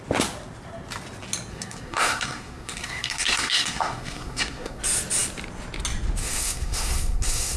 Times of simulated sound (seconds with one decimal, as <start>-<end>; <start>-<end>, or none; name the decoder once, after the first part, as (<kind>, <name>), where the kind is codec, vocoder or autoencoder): 1.5-4.8 (codec, SNAC); 6.2-7.6